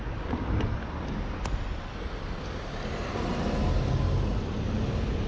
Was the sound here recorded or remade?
recorded